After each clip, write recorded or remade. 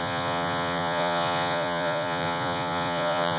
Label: remade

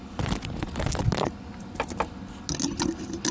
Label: recorded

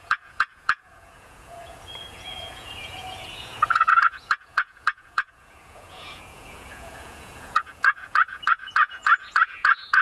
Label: remade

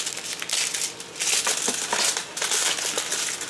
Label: recorded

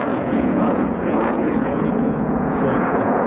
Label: remade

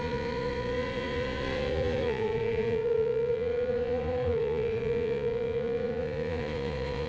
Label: remade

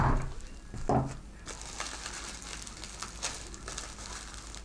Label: recorded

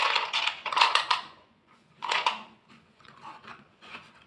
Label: remade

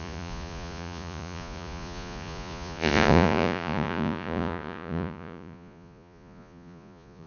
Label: remade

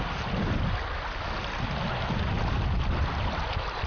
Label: recorded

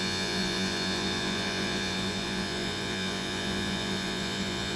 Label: remade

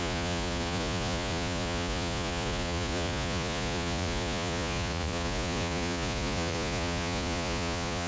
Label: remade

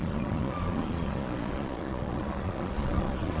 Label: remade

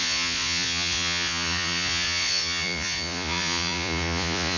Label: remade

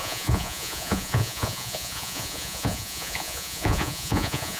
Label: remade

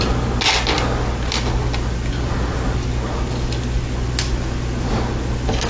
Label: recorded